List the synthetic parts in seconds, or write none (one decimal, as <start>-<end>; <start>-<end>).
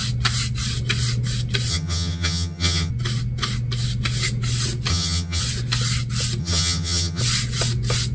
1.7-2.9; 4.9-5.4; 6.4-7.2